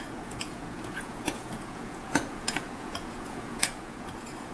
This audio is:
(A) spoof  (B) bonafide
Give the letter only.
A